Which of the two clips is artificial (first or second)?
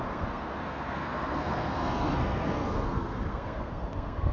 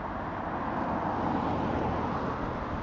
first